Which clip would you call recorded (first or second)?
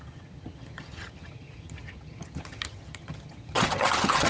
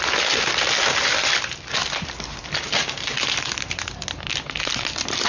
second